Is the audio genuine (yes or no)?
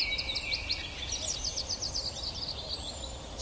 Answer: yes